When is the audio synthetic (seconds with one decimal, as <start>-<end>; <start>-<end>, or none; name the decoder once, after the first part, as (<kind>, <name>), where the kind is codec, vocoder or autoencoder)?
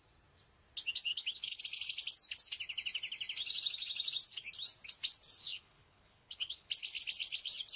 1.1-1.6 (codec, HILCodec); 5.4-6.7